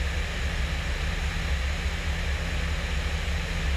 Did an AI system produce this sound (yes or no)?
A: no